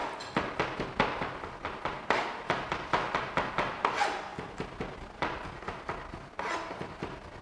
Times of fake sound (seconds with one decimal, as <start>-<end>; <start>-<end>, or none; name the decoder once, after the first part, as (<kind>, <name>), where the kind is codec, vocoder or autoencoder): none